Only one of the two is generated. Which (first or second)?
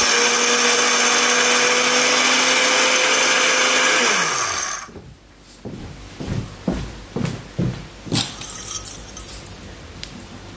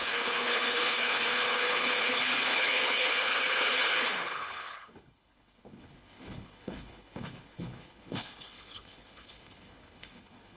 second